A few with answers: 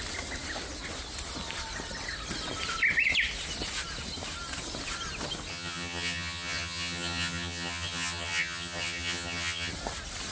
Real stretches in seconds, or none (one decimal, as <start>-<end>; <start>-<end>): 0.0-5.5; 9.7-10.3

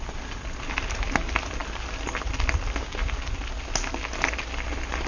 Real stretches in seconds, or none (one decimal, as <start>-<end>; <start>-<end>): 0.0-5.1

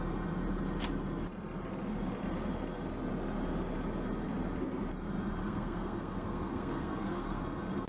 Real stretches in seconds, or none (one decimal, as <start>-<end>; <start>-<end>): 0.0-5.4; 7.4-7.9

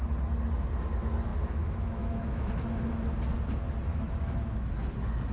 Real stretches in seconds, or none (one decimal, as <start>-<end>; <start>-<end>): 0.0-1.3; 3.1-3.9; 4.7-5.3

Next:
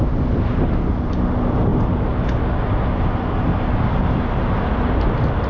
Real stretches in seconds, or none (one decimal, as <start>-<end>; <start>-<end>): 0.0-5.5

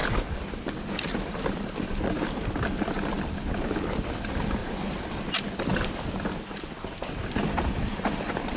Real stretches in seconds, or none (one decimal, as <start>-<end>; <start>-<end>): 0.0-0.9; 4.6-5.3; 5.7-7.2